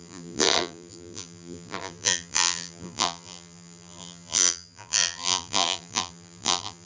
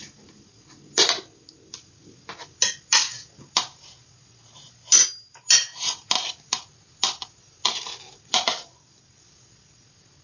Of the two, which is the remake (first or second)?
first